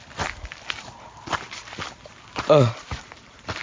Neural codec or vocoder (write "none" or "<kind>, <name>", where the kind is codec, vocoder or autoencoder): none